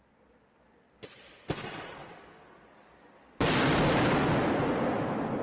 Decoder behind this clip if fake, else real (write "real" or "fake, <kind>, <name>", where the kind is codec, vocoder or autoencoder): fake, vocoder, BigVGAN v2